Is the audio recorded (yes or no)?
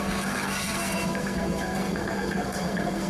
no